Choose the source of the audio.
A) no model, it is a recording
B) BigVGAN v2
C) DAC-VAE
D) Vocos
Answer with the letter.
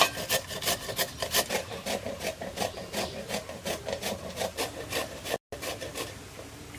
A